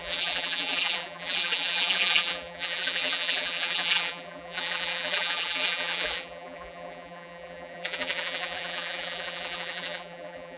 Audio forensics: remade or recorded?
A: remade